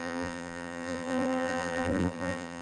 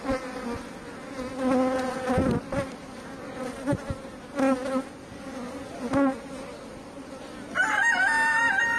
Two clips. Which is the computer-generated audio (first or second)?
first